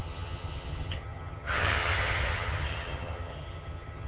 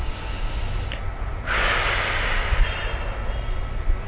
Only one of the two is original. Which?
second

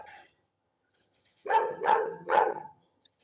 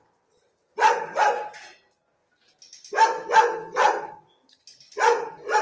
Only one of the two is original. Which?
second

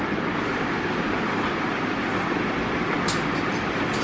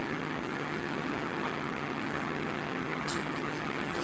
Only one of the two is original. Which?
first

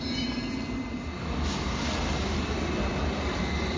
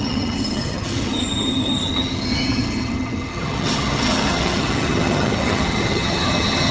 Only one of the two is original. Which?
first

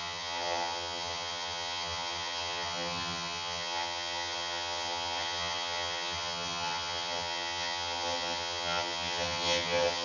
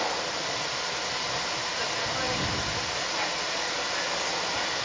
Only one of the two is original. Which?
second